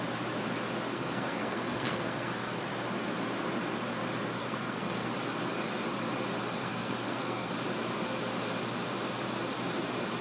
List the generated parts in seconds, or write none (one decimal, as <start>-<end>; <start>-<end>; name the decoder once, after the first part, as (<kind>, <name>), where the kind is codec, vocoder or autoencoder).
0.9-2.6 (codec, SNAC); 4.4-5.1; 6.6-7.5